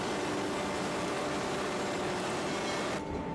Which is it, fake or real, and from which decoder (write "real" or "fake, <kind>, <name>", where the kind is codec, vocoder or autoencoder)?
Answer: real